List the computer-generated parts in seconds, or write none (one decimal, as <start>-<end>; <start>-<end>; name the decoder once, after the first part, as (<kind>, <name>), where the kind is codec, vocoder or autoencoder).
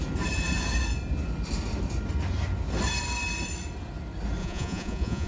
4.4-5.3 (vocoder, Vocos)